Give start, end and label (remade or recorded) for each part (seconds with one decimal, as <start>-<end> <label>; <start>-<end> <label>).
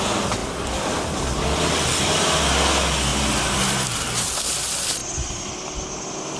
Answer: 0.0-0.4 recorded; 0.4-2.0 remade; 2.0-3.1 recorded; 3.1-4.4 remade; 4.4-6.4 recorded